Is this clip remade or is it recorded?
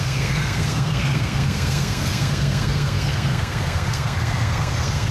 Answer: remade